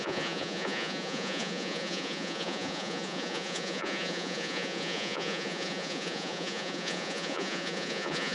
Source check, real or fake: fake